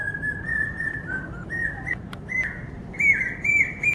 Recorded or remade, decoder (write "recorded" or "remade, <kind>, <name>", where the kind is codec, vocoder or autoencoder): remade, vocoder, BigVGAN v2